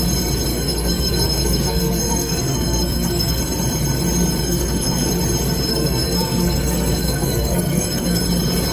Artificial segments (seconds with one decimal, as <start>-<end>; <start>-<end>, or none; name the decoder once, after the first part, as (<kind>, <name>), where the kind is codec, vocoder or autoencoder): 0.5-3.4 (codec, SNAC); 4.4-5.1; 5.7-8.2